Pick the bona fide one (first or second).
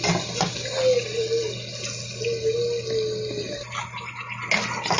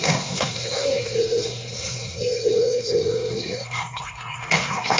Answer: first